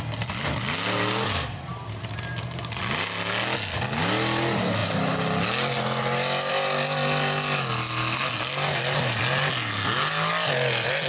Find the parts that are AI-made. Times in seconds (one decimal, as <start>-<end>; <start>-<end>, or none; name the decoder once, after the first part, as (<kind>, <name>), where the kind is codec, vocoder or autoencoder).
1.7-2.8 (vocoder, BigVGAN v2)